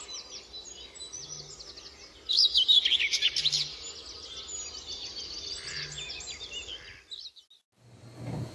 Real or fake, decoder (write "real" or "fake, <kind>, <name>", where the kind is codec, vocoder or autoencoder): real